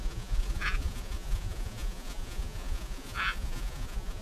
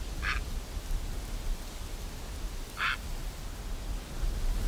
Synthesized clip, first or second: first